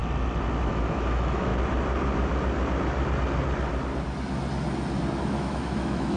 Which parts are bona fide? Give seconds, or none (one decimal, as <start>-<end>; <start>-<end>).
0.0-0.7; 1.5-5.2